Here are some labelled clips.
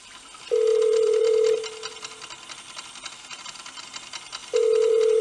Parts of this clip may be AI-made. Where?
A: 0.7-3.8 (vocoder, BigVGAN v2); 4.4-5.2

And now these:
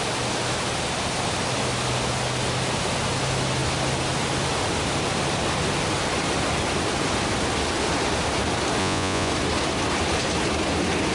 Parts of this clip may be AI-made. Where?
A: 8.8-9.3 (vocoder, Vocos)

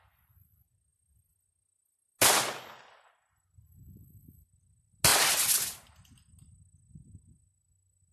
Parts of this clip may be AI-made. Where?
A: none

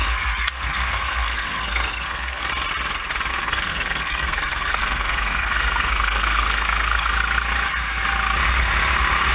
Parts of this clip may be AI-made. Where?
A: 0.0-2.5 (codec, SNAC); 3.3-7.1

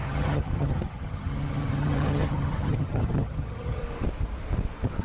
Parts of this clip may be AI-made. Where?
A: 0.0-3.8 (vocoder, HiFi-GAN)

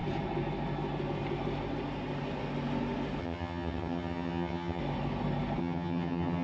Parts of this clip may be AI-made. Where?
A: 3.2-4.8 (vocoder, HiFi-GAN); 5.6-6.4

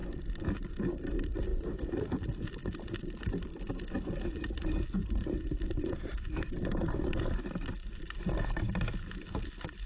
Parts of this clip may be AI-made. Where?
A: 0.0-9.9 (vocoder, BigVGAN v2)

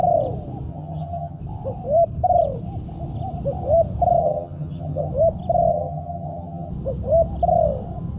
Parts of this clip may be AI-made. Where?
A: 0.7-1.4 (vocoder, HiFi-GAN); 4.2-5.1; 5.7-6.7